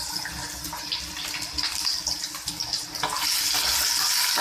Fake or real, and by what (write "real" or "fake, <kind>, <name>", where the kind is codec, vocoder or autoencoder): real